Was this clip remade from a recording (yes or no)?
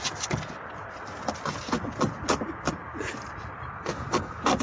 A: no